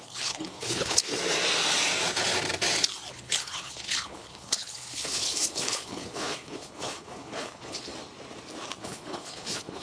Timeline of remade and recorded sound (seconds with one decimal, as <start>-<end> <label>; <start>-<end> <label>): 0.0-1.1 remade; 1.1-3.1 recorded; 3.1-7.9 remade; 7.9-8.8 recorded; 8.8-9.8 remade